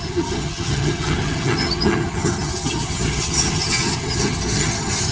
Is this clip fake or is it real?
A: fake